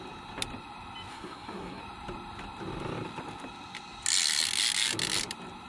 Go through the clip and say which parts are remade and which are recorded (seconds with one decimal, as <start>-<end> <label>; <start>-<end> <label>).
0.0-1.1 recorded; 1.1-1.8 remade; 1.8-5.7 recorded